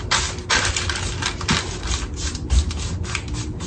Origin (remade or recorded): recorded